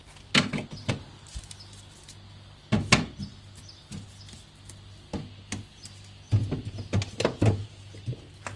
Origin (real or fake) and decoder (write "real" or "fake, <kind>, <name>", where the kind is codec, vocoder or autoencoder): real